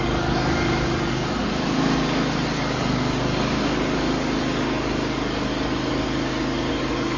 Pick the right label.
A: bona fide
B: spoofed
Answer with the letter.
B